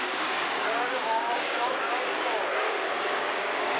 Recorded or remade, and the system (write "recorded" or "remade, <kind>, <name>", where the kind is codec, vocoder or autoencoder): remade, codec, DAC